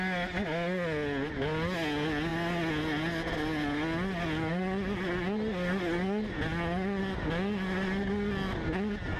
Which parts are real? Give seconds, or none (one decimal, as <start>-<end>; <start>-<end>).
0.0-9.2